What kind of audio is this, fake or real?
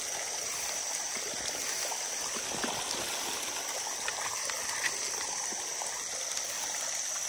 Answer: real